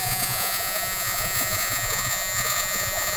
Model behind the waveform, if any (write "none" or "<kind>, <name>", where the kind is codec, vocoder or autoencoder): vocoder, Vocos